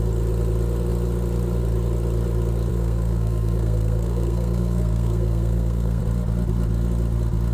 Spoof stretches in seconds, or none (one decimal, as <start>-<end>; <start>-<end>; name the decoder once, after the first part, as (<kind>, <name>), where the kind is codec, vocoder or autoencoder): 2.7-6.0 (codec, SNAC)

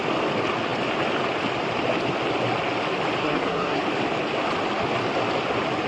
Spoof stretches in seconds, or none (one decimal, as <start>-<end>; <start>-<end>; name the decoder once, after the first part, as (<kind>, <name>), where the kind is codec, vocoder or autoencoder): 3.2-3.8 (codec, SNAC)

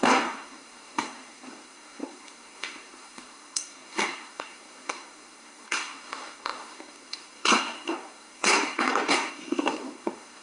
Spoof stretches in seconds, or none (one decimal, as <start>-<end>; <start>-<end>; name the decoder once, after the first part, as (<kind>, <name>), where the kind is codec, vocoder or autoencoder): 0.0-10.4 (codec, SNAC)

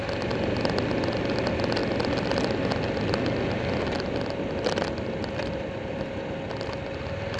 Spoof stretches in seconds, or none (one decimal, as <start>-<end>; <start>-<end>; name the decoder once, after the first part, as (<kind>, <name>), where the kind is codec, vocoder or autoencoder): none